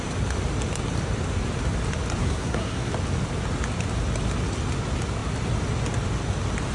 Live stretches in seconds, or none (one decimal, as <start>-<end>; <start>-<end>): 0.0-2.2; 2.9-6.7